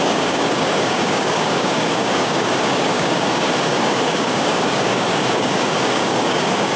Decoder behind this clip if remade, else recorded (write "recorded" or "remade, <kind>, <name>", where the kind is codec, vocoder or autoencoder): remade, codec, DAC